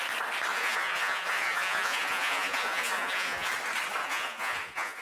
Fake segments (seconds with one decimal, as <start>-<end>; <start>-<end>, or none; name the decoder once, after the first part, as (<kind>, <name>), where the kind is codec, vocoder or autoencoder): 0.5-3.5 (vocoder, Vocos); 4.0-5.0